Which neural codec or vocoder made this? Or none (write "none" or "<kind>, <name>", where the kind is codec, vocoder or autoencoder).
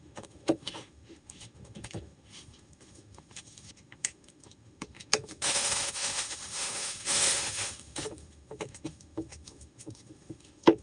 autoencoder, DAC-VAE